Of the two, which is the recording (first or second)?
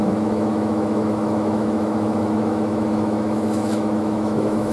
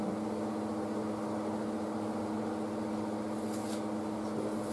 second